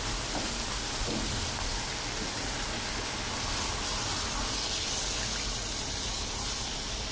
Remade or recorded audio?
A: recorded